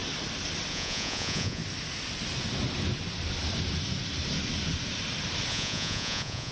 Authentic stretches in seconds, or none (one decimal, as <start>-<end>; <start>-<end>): 0.0-0.7; 1.6-5.5